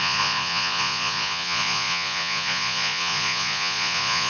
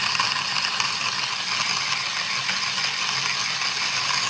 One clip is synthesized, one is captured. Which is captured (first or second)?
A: second